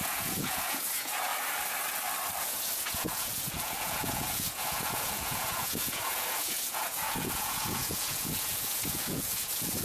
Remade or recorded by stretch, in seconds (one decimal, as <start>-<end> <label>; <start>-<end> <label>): 0.0-1.3 remade; 1.3-2.4 recorded; 2.4-9.8 remade